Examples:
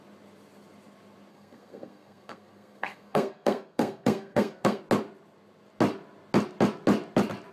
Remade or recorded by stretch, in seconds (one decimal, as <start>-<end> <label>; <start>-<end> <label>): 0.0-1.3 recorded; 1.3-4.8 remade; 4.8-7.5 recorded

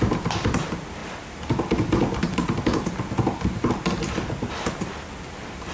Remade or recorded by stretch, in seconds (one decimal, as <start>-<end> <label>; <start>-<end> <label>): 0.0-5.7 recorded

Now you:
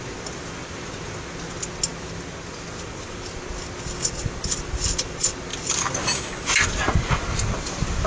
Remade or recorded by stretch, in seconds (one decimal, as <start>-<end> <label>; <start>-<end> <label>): 0.0-8.1 recorded